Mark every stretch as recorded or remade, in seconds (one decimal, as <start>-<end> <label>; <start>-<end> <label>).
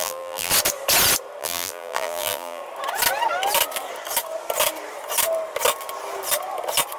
0.0-0.5 remade; 0.5-1.4 recorded; 1.4-2.6 remade; 2.6-7.0 recorded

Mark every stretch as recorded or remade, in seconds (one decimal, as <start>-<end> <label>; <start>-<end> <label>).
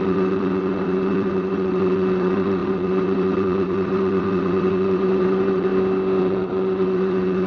0.0-5.7 remade; 5.7-6.2 recorded; 6.2-7.5 remade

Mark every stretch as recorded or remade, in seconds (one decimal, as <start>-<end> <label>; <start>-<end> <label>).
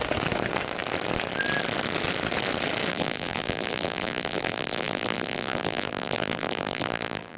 0.0-2.9 recorded; 2.9-7.4 remade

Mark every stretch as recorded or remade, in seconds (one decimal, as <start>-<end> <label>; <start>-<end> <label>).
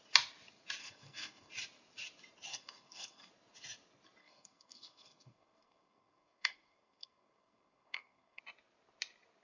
0.0-0.8 recorded; 0.8-1.5 remade; 1.5-2.5 recorded; 2.5-3.3 remade; 3.3-4.2 recorded; 4.2-8.4 remade; 8.4-9.4 recorded